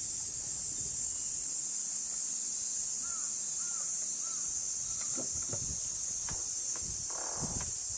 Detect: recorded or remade recorded